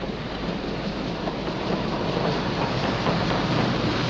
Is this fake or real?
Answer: real